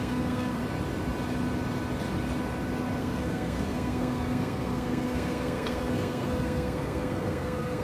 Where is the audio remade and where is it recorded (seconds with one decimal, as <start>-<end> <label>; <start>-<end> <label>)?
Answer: 0.0-0.6 remade; 0.6-3.0 recorded; 3.0-7.8 remade